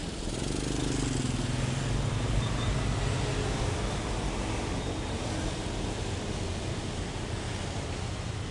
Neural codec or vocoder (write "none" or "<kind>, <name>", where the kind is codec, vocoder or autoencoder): none